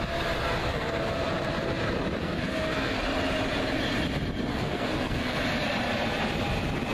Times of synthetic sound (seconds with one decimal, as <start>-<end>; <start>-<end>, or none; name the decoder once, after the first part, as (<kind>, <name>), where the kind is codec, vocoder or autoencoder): 0.6-1.3 (codec, SNAC); 2.2-3.0; 4.5-5.4